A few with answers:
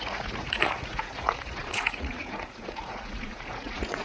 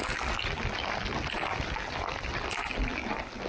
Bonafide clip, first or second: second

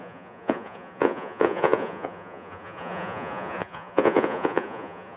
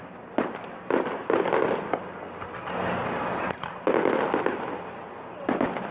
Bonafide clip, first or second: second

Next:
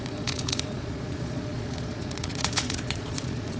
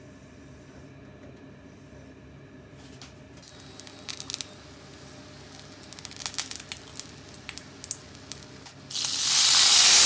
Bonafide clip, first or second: second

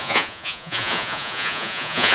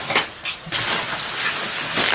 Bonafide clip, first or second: second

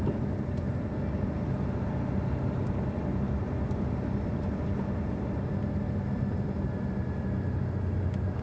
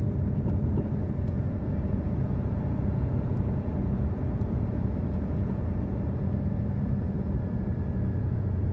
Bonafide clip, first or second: first